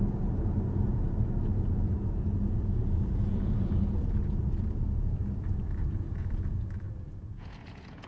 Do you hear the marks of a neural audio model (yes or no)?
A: yes